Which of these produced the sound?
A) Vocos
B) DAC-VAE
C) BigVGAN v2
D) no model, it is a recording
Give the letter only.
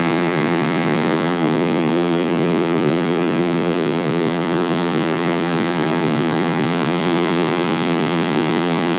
A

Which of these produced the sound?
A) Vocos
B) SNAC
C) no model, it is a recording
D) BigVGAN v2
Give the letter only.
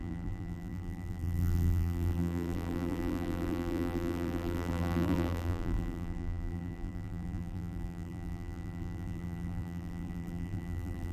D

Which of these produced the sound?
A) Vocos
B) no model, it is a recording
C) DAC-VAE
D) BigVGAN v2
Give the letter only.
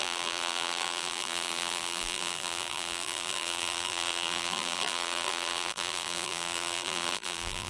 D